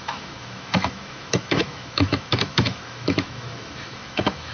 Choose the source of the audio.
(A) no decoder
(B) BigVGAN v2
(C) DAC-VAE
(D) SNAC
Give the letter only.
C